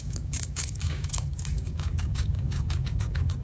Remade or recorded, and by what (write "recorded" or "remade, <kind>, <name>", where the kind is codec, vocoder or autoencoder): remade, codec, DAC